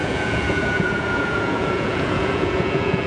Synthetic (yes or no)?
yes